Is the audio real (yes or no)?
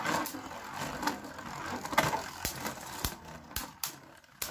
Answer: yes